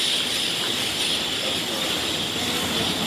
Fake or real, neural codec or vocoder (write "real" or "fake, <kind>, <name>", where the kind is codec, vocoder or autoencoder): real